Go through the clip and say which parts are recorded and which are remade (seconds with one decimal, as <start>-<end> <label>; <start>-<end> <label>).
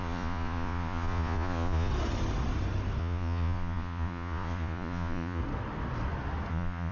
0.0-1.9 remade; 1.9-3.0 recorded; 3.0-5.4 remade; 5.4-6.5 recorded; 6.5-6.9 remade